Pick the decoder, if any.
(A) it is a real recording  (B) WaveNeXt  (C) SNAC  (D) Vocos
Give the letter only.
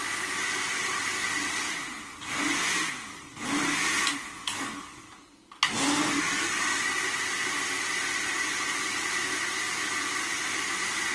A